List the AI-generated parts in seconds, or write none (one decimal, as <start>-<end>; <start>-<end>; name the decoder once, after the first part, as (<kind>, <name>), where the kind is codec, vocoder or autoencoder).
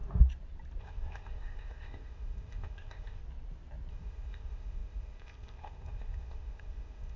0.8-3.2 (codec, ZipCodec); 3.9-7.2